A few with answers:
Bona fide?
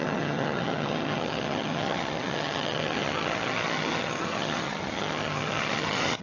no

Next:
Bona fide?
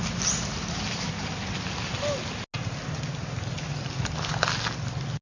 yes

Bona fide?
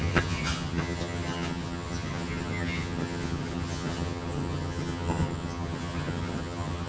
no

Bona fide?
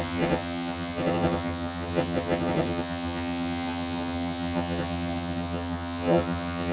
no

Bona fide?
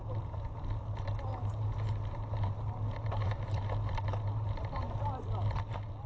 yes